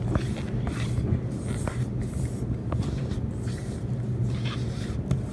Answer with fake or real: real